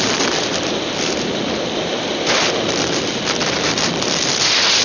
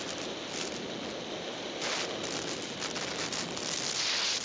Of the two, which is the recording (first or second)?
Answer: second